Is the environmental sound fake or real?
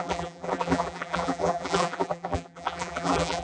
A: fake